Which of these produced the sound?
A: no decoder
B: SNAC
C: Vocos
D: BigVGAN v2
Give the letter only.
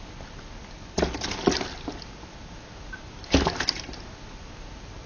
A